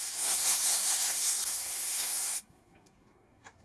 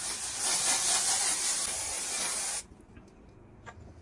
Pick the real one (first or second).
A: second